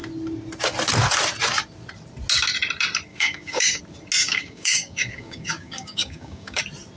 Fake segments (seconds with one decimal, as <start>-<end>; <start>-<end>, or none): 3.1-3.8; 4.2-6.6